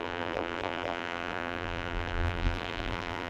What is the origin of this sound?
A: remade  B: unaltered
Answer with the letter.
A